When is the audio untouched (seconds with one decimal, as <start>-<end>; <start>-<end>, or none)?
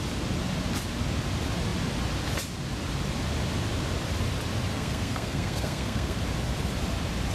0.0-4.7; 6.2-7.3